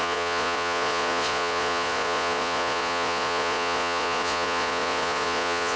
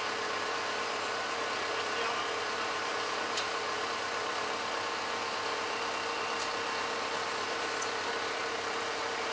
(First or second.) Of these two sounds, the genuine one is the second